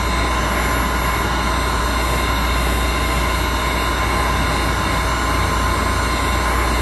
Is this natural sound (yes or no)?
yes